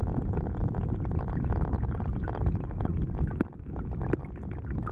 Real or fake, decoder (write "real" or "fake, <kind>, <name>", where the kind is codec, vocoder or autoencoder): real